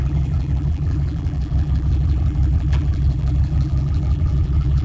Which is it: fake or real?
fake